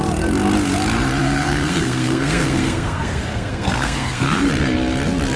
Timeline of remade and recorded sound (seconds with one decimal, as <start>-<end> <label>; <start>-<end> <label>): 0.0-1.2 recorded; 1.2-4.4 remade; 4.4-5.4 recorded